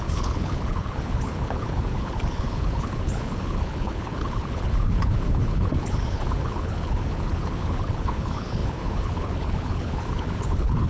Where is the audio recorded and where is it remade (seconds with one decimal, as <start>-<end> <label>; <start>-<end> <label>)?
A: 0.0-10.9 remade